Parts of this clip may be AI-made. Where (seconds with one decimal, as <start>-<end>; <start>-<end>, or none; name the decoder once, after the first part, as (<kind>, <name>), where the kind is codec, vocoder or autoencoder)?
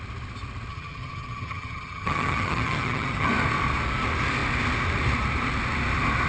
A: 0.7-3.3 (vocoder, HiFi-GAN)